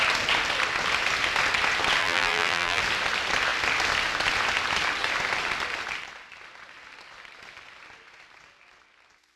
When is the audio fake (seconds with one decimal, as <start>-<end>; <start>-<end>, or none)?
2.0-2.8